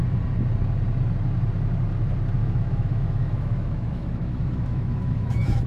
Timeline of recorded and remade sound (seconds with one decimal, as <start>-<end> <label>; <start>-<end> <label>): 0.0-2.4 recorded; 2.4-5.7 remade